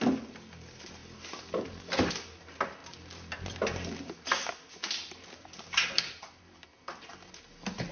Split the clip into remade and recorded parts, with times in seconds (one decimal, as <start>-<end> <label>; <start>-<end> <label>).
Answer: 0.0-7.9 recorded